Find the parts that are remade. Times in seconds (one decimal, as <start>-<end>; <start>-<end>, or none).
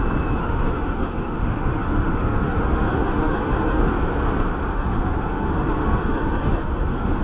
0.4-3.9; 4.7-7.2